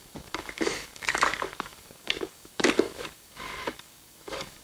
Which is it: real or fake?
fake